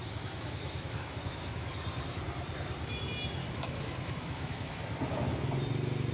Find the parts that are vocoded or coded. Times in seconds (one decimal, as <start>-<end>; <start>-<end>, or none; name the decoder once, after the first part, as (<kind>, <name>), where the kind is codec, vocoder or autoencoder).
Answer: 0.0-1.7 (autoencoder, DAC-VAE); 3.4-4.8